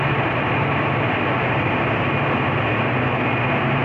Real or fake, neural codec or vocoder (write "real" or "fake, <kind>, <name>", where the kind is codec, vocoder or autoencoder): real